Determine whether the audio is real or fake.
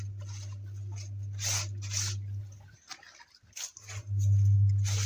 real